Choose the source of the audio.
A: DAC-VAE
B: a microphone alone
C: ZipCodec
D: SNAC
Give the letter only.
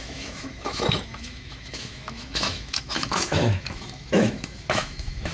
A